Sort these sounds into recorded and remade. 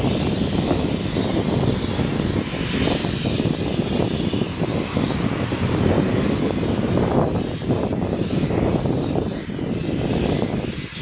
recorded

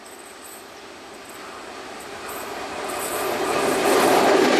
recorded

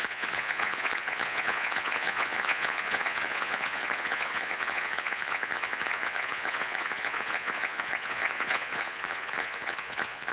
remade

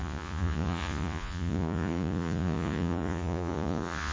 remade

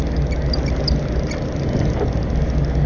recorded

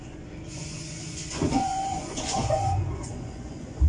remade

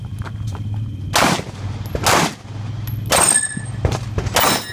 recorded